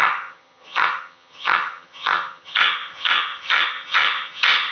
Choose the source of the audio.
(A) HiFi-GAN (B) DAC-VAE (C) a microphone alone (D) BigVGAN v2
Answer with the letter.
A